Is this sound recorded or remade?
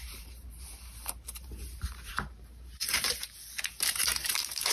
remade